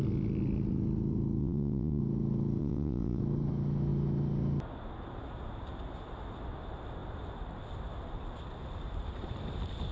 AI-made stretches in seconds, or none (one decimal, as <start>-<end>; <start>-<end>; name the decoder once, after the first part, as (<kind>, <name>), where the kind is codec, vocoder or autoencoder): 1.4-2.0 (vocoder, WaveNeXt); 2.6-3.2